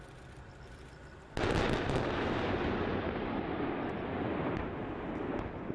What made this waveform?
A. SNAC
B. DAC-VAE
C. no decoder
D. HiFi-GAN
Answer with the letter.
C